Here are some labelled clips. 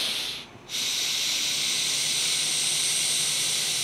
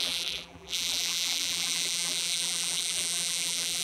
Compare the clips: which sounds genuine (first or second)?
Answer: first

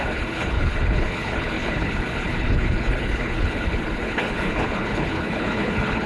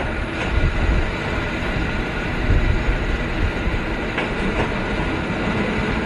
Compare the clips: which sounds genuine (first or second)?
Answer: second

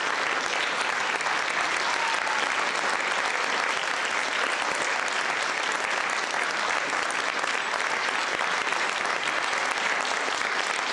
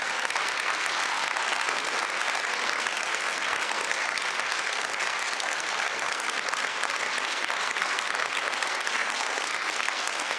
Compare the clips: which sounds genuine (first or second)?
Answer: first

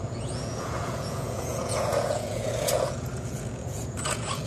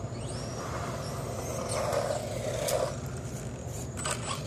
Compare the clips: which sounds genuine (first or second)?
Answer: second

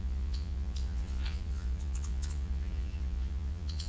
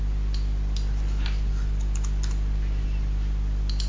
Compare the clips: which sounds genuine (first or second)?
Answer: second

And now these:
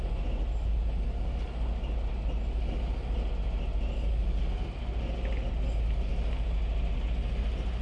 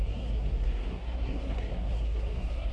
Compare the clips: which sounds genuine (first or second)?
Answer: first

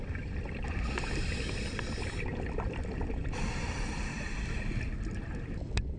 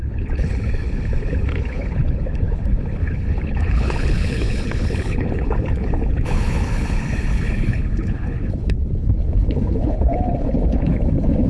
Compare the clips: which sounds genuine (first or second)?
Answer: first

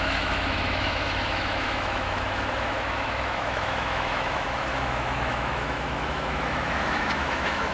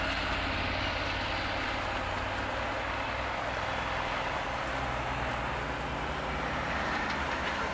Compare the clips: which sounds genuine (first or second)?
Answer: second